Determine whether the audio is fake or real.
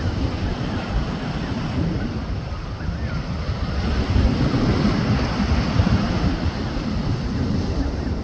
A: fake